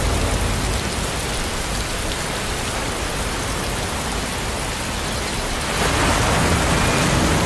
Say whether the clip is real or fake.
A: real